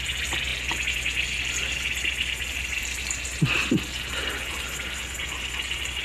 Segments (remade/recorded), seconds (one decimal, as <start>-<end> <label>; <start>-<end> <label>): 0.0-6.0 recorded